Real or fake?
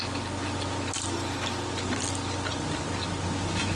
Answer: real